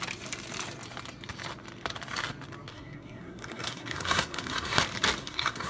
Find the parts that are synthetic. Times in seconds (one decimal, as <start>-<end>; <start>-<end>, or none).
2.7-4.8; 5.2-5.7